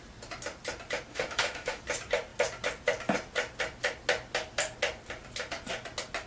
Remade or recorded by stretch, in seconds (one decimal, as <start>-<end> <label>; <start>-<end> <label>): 0.0-1.1 recorded; 1.1-1.8 remade; 1.8-6.3 recorded